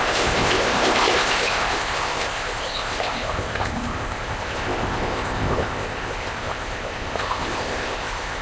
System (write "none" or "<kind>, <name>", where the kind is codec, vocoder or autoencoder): codec, ZipCodec